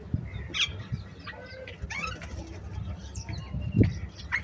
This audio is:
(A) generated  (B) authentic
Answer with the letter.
B